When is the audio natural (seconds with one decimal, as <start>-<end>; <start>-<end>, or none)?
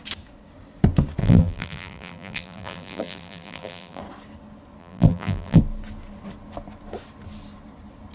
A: 0.0-1.2; 4.0-4.8; 5.6-8.1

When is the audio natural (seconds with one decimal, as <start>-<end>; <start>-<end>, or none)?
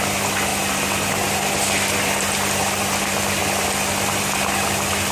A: 0.0-5.1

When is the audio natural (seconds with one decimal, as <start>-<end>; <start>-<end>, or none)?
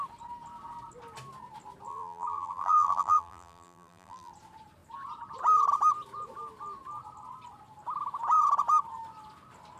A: 0.0-1.9; 4.3-9.8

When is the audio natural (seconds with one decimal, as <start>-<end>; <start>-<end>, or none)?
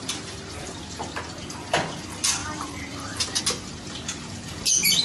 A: 0.0-2.4; 3.4-5.0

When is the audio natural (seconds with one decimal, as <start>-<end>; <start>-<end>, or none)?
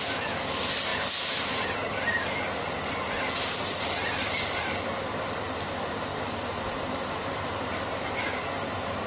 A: 0.0-6.1; 8.5-9.1